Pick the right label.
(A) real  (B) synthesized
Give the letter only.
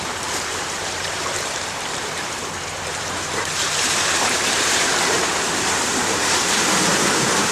B